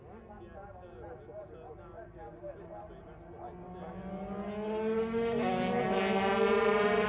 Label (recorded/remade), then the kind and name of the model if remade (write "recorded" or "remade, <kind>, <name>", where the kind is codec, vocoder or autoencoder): recorded